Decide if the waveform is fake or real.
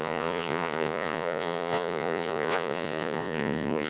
fake